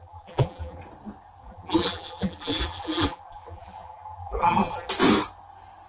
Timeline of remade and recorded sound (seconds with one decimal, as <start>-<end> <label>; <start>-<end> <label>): 0.0-0.8 remade; 0.8-1.4 recorded; 1.4-4.9 remade; 4.9-5.9 recorded